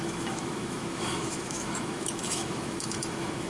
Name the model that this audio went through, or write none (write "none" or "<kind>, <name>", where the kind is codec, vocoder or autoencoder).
autoencoder, DAC-VAE